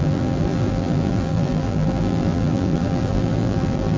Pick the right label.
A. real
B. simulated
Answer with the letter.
B